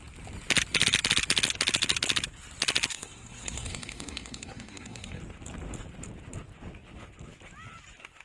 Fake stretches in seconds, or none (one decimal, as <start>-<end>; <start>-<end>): 2.9-5.2